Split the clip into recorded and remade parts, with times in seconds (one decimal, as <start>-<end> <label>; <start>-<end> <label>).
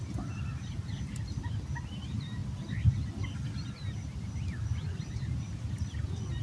0.0-6.4 recorded